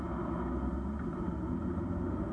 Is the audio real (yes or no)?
yes